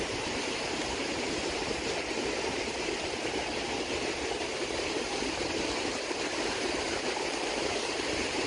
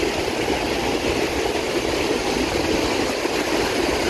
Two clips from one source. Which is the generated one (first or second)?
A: first